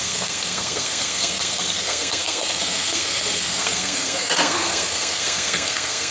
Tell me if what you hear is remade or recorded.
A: remade